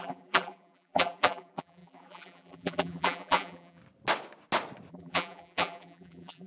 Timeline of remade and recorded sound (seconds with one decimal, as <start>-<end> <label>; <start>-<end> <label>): 0.0-3.8 remade; 3.8-4.9 recorded; 4.9-6.5 remade